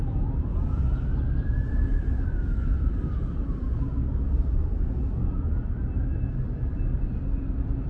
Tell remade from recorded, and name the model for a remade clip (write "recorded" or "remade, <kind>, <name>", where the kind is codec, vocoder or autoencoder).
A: remade, vocoder, BigVGAN v2